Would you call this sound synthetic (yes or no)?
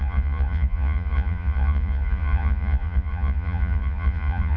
yes